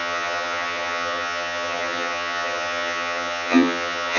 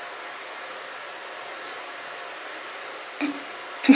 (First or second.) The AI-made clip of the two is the first